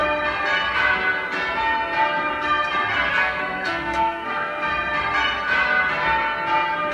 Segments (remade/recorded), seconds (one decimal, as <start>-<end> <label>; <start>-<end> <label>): 0.0-3.1 recorded; 3.1-4.7 remade; 4.7-6.9 recorded

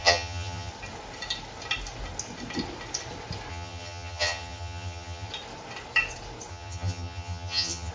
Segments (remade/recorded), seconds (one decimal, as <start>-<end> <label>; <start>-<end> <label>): 0.0-0.7 remade; 0.7-3.5 recorded; 3.5-5.3 remade; 5.3-6.5 recorded; 6.5-7.9 remade